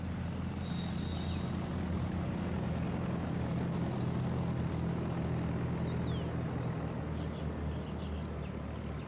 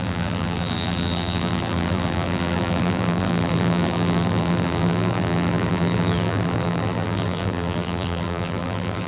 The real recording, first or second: first